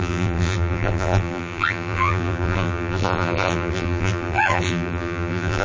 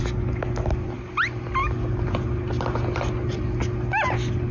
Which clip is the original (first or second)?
second